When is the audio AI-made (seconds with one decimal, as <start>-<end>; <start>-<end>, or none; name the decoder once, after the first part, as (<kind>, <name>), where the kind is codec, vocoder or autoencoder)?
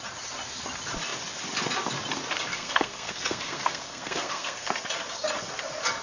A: 2.5-4.7 (codec, SNAC)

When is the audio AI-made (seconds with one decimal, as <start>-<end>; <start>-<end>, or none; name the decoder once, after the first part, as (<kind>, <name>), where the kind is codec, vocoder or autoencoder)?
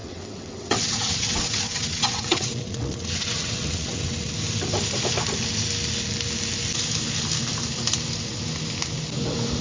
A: 0.0-4.3 (vocoder, WaveNeXt)